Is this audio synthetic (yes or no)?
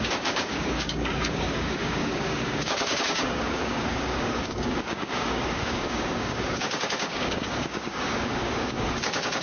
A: yes